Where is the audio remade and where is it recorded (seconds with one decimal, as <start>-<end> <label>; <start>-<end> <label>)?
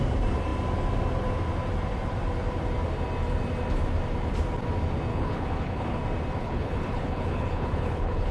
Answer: 0.0-5.1 recorded; 5.1-6.0 remade; 6.0-6.4 recorded; 6.4-8.3 remade